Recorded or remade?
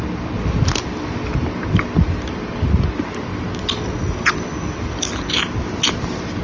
recorded